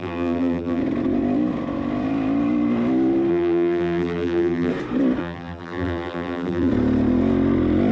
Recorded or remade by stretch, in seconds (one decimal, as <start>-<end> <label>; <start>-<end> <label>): 0.0-0.8 remade; 0.8-3.3 recorded; 3.3-4.7 remade; 4.7-5.2 recorded; 5.2-6.7 remade; 6.7-7.9 recorded